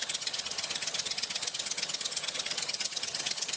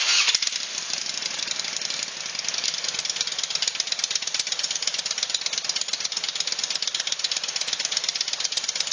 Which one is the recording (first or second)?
second